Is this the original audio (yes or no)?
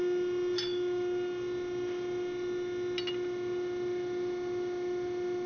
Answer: yes